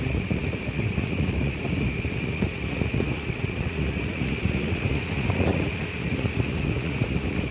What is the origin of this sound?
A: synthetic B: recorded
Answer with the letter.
A